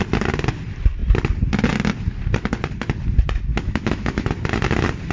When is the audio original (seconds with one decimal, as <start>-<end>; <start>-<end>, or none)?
0.0-3.5; 4.3-5.1